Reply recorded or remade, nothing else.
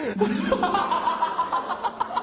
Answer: remade